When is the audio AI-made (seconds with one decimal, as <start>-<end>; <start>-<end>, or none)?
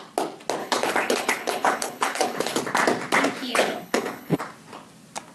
0.6-2.6; 3.4-4.4